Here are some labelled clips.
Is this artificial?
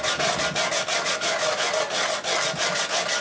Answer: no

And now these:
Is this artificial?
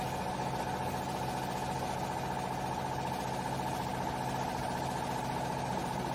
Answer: no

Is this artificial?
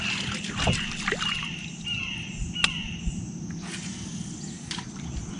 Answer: no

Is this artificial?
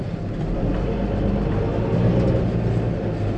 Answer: no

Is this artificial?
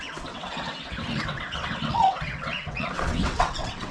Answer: yes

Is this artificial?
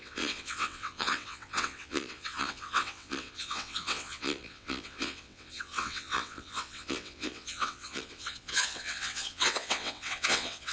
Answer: yes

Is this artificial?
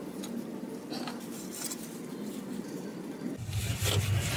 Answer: no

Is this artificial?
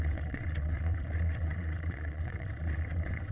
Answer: yes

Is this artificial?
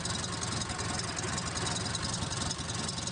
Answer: no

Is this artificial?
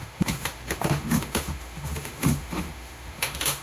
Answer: yes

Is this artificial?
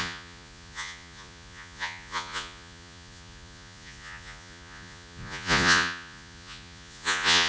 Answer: yes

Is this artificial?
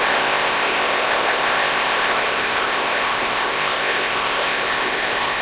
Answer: yes